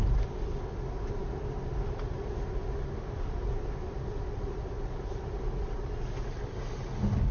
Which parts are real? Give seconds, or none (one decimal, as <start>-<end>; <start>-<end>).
0.0-7.3

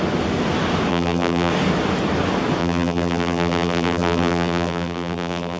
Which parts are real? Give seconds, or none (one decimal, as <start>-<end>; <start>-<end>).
0.0-0.9; 1.5-2.6